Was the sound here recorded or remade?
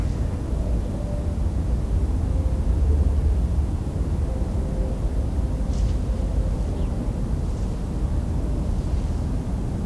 recorded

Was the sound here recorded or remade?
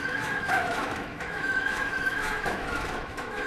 remade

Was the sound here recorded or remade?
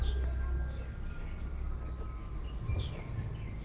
recorded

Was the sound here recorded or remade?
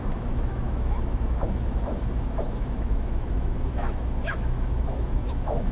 remade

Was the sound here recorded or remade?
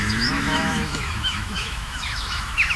remade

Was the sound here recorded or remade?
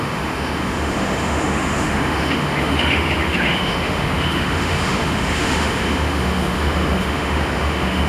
remade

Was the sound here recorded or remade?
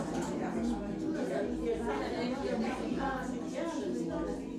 recorded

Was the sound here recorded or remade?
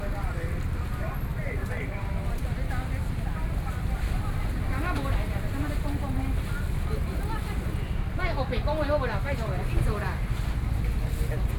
recorded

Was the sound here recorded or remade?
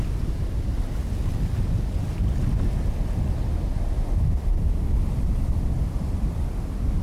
recorded